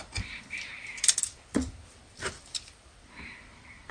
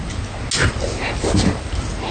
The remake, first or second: first